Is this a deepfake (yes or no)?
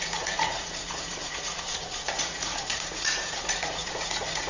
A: yes